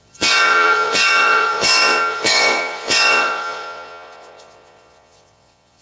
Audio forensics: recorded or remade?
remade